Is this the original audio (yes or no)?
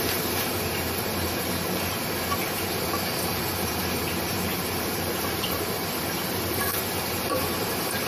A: no